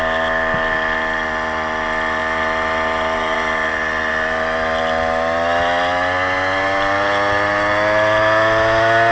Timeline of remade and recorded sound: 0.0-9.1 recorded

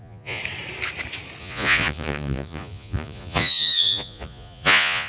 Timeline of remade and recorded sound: 0.0-0.4 remade; 0.4-1.4 recorded; 1.4-5.1 remade

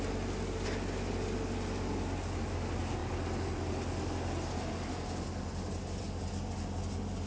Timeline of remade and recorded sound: 0.0-7.3 recorded